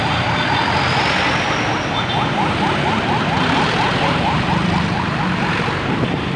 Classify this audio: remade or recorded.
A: recorded